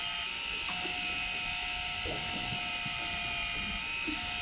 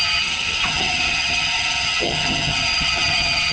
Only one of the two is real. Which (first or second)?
first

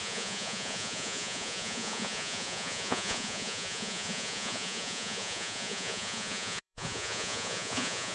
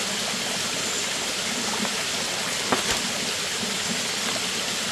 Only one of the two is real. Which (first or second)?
second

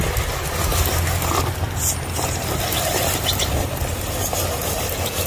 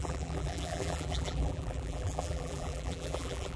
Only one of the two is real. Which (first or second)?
first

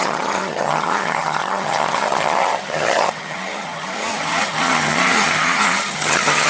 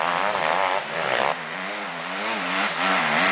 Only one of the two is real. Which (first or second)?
second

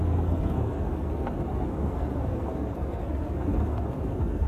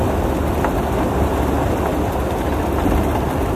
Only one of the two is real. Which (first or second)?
second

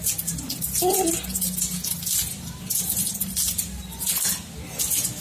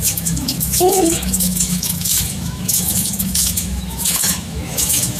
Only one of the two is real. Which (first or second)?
first